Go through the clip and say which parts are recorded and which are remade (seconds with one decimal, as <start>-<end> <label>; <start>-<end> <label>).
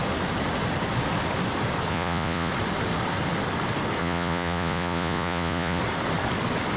0.0-1.9 recorded; 1.9-2.5 remade; 2.5-4.0 recorded; 4.0-5.8 remade; 5.8-6.8 recorded